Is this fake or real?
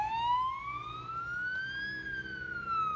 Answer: real